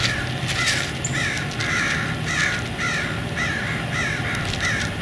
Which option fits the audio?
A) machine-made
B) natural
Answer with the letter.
B